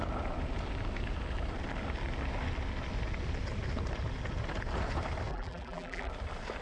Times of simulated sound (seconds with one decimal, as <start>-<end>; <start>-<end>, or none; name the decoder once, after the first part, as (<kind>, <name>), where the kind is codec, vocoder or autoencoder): 5.3-6.1 (vocoder, BigVGAN v2)